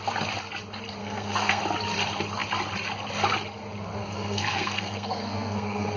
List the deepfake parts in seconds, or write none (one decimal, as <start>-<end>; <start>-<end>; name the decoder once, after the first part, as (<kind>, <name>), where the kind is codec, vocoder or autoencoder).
1.0-1.6 (codec, SNAC); 4.0-6.0